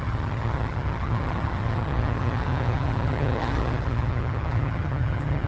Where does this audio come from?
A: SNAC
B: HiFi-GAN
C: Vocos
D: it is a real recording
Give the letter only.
B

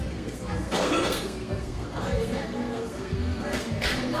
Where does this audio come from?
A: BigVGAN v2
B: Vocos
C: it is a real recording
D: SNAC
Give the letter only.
D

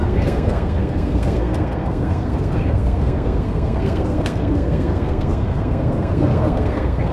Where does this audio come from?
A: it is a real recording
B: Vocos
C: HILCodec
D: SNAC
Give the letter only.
D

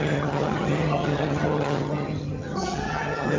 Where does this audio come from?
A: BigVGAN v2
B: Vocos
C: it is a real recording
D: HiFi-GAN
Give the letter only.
D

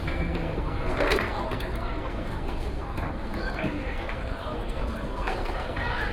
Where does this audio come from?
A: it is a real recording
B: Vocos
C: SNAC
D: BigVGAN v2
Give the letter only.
C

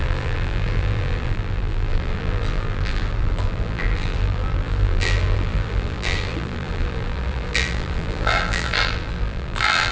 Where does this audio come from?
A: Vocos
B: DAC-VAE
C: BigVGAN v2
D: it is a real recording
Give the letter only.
C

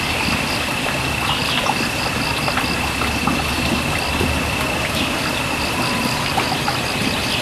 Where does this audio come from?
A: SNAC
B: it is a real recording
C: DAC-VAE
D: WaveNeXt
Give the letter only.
B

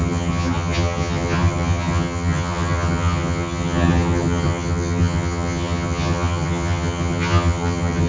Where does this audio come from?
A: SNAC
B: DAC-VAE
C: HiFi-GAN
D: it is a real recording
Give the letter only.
C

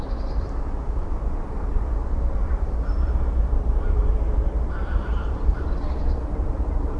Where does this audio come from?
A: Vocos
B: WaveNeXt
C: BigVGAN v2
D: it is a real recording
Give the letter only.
C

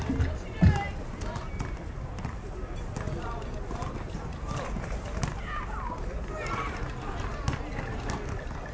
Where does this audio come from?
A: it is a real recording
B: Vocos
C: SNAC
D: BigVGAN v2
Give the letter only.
A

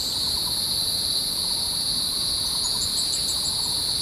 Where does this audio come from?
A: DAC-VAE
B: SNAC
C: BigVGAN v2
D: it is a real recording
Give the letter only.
D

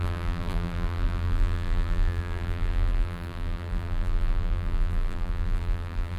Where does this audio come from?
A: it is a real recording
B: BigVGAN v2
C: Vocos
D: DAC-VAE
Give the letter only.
B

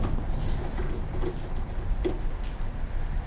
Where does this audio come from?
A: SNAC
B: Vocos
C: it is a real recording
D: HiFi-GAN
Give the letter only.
C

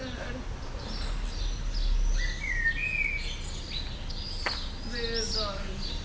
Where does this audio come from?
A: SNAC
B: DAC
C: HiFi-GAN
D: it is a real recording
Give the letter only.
D